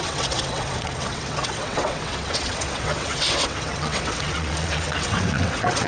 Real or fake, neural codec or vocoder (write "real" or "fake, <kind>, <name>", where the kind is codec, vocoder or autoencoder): fake, vocoder, WaveNeXt